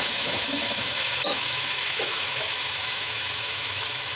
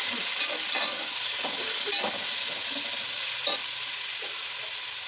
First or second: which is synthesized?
first